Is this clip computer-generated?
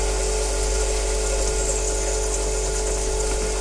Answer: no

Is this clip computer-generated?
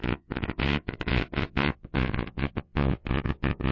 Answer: yes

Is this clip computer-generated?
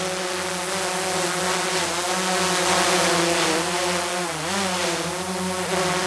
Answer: no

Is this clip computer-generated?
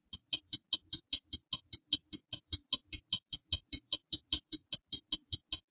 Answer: no